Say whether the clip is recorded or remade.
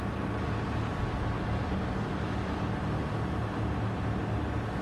recorded